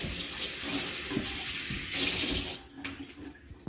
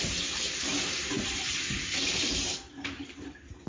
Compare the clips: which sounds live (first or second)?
first